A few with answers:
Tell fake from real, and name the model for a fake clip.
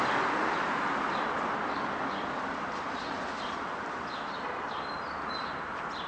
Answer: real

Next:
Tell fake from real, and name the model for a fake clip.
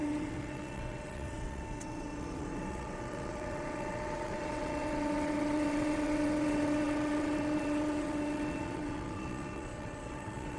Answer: fake, vocoder, WaveNeXt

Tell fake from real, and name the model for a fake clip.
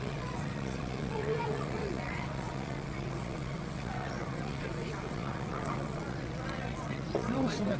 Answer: fake, vocoder, WaveNeXt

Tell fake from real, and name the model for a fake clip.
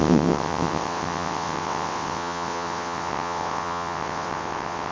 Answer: fake, vocoder, WaveNeXt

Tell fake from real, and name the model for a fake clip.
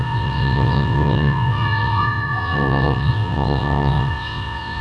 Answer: fake, vocoder, WaveNeXt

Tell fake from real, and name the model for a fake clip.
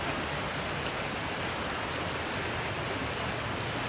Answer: real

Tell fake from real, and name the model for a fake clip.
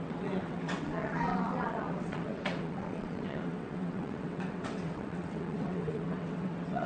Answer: fake, vocoder, WaveNeXt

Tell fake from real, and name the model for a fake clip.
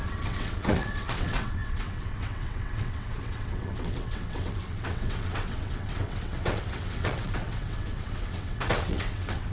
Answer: fake, vocoder, WaveNeXt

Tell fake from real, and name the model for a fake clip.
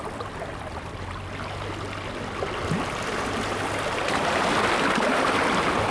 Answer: real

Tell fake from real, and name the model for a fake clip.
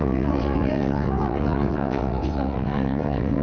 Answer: fake, vocoder, WaveNeXt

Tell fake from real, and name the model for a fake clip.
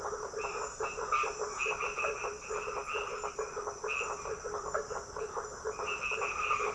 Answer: real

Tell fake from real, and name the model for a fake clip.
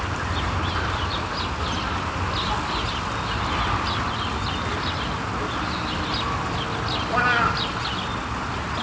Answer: real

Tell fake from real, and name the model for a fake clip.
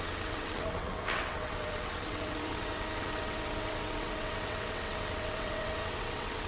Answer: fake, vocoder, WaveNeXt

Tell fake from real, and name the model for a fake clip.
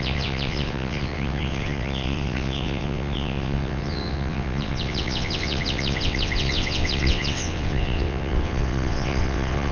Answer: fake, vocoder, WaveNeXt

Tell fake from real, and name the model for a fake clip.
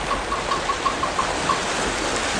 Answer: real